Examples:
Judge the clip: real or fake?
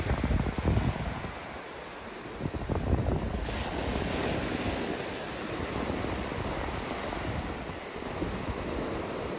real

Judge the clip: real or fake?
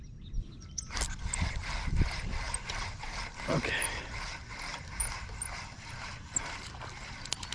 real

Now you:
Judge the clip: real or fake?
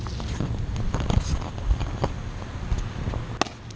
real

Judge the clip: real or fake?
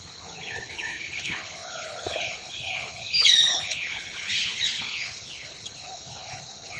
fake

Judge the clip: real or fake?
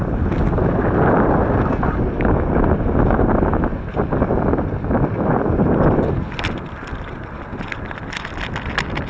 real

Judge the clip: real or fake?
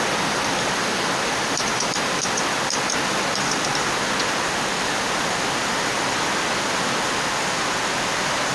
real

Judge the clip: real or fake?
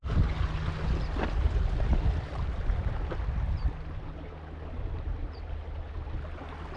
real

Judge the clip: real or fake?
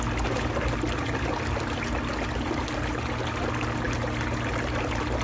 real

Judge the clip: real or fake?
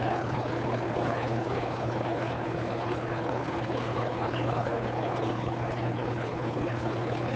fake